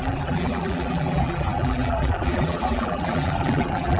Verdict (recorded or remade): remade